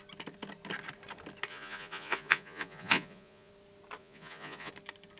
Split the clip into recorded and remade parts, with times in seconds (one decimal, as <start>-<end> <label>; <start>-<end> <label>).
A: 0.0-1.5 recorded; 1.5-3.5 remade; 3.5-4.0 recorded; 4.0-4.7 remade; 4.7-5.2 recorded